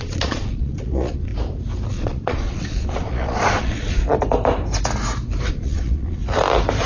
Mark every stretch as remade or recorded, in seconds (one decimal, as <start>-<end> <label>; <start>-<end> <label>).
0.0-1.3 remade; 1.3-1.9 recorded; 1.9-4.0 remade; 4.0-5.5 recorded; 5.5-6.2 remade; 6.2-6.9 recorded